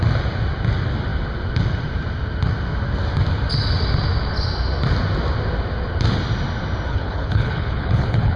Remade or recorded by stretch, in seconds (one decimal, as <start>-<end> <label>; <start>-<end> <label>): 0.0-6.9 recorded; 6.9-8.4 remade